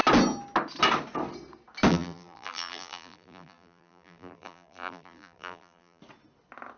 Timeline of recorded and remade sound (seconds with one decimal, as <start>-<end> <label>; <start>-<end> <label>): 0.0-1.9 recorded; 1.9-6.0 remade; 6.0-6.8 recorded